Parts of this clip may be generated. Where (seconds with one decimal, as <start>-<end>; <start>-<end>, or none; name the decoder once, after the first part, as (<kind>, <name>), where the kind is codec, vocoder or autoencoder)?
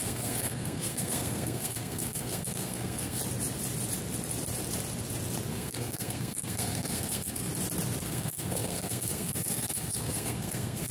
0.0-3.2 (codec, SNAC); 5.5-7.5; 8.0-10.9